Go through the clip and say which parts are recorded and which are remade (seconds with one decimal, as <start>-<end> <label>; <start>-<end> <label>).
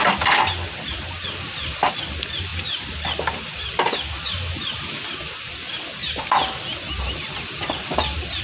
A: 0.0-6.0 remade; 6.0-7.2 recorded; 7.2-8.4 remade